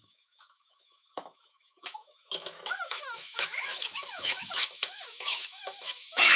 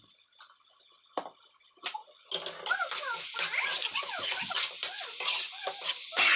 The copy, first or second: first